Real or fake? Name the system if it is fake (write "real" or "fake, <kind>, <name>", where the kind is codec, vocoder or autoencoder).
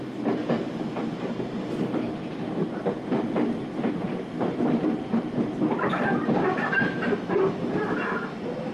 real